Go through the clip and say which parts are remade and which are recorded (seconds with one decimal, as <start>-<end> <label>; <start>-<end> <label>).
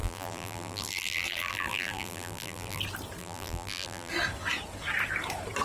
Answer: 0.0-2.8 remade; 2.8-3.2 recorded; 3.2-4.1 remade; 4.1-5.6 recorded